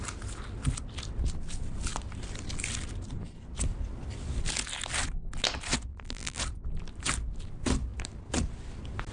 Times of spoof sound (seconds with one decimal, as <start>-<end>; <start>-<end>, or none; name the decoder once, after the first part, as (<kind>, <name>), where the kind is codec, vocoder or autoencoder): 5.9-6.4 (vocoder, BigVGAN v2)